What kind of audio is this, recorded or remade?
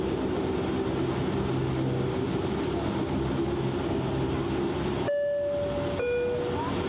recorded